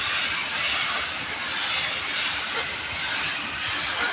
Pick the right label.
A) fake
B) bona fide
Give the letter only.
B